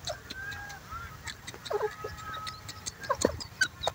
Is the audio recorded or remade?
remade